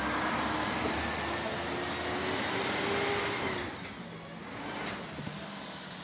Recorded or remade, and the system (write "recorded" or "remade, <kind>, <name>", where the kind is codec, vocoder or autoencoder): recorded